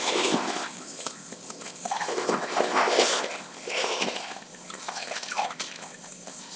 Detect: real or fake fake